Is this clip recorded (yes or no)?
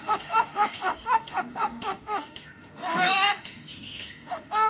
no